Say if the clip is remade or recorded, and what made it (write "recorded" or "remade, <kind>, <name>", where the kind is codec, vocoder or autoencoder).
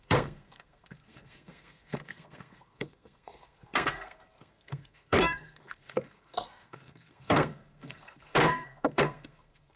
remade, codec, SNAC